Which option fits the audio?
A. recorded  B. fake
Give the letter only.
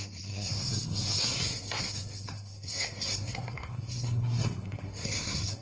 B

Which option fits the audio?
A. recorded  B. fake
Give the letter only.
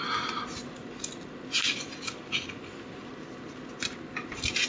A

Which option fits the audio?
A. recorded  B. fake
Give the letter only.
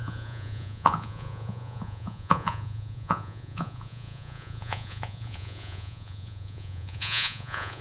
B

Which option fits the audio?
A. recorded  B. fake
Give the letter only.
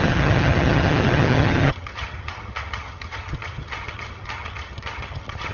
B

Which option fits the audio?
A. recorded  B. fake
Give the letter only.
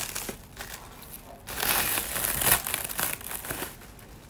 A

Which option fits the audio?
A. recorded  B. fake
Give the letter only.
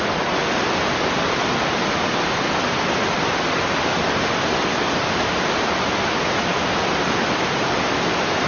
A